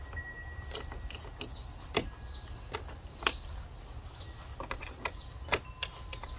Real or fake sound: real